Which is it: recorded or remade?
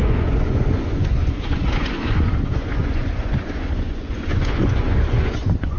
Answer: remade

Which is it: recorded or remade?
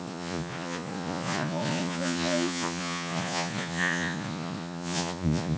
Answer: remade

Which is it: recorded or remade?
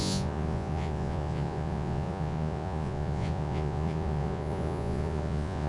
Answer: remade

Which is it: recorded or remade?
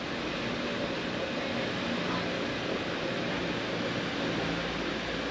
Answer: recorded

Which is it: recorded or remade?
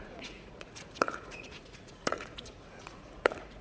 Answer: remade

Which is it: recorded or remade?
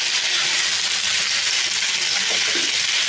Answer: recorded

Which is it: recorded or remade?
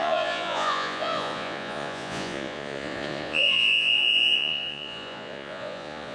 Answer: remade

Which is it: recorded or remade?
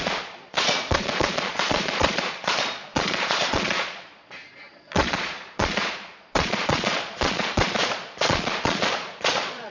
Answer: remade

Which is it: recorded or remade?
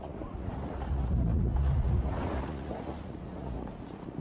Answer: remade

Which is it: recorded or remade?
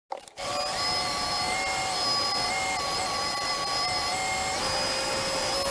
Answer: recorded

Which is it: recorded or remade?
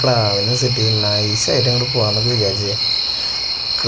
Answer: recorded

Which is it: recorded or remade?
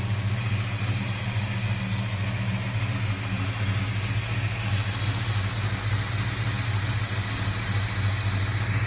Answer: recorded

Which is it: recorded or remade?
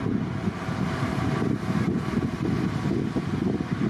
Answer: recorded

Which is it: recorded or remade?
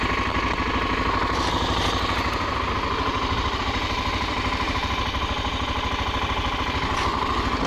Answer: recorded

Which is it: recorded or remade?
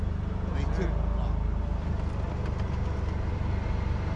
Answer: recorded